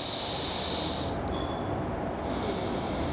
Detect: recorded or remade recorded